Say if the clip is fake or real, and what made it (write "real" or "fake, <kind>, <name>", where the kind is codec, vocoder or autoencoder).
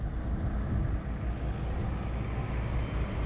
real